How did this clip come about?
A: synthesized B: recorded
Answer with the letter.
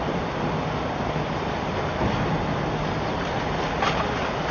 B